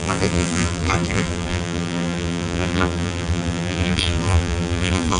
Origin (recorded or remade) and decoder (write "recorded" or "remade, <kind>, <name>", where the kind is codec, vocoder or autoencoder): remade, vocoder, BigVGAN v2